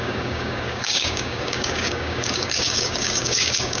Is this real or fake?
fake